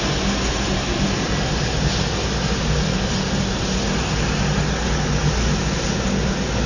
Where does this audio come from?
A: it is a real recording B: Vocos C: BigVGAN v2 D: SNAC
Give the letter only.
A